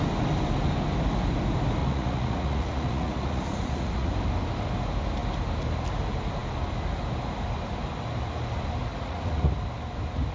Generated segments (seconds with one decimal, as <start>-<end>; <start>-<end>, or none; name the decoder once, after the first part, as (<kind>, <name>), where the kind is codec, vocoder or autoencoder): 1.8-4.1 (vocoder, Vocos); 8.9-9.5